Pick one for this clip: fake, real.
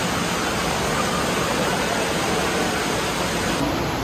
real